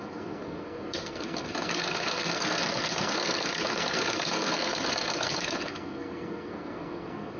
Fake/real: fake